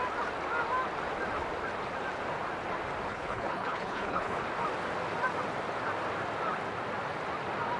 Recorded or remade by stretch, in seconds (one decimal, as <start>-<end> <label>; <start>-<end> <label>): 0.0-3.1 recorded; 3.1-4.4 remade; 4.4-7.8 recorded